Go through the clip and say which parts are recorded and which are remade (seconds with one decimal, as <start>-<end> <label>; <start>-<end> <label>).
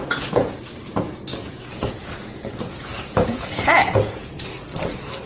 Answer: 0.0-0.6 remade; 0.6-1.3 recorded; 1.3-4.5 remade; 4.5-5.3 recorded